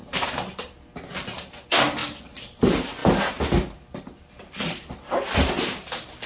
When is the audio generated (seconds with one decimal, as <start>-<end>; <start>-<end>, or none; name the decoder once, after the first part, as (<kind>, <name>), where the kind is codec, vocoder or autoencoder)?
3.0-5.6 (vocoder, BigVGAN v2)